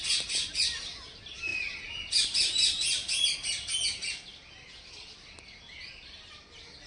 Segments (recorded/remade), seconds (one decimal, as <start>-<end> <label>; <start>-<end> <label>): 0.0-6.9 recorded